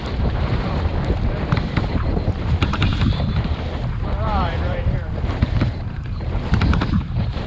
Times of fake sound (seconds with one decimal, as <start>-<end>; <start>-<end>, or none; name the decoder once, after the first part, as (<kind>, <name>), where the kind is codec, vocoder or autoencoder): 0.0-0.9 (vocoder, BigVGAN v2); 1.7-7.5